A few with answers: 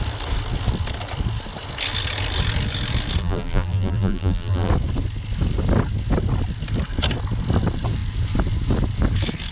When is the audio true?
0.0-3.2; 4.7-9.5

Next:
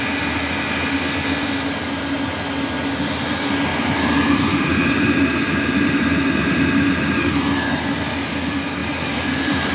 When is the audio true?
0.0-3.7; 7.2-8.8

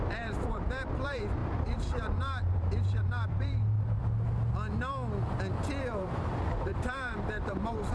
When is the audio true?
4.0-5.8

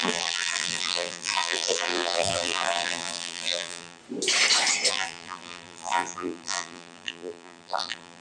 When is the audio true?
4.0-4.9